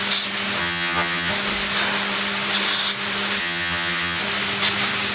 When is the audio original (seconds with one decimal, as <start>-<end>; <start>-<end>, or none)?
0.0-0.6; 1.3-3.4; 4.2-5.1